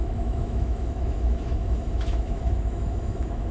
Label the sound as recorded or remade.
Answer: remade